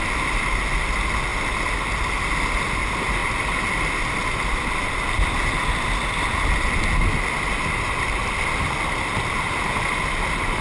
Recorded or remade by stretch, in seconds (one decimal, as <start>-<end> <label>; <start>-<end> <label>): 0.0-10.6 recorded